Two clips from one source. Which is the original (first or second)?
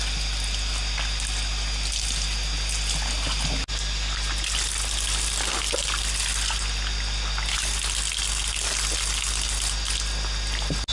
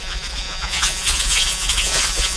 first